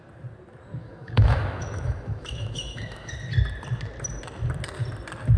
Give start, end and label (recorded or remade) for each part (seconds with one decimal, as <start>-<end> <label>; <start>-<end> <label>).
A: 0.0-0.8 recorded; 0.8-3.1 remade; 3.1-5.4 recorded